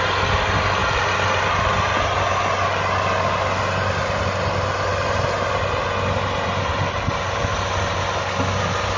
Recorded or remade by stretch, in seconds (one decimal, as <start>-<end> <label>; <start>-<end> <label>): 0.0-9.0 recorded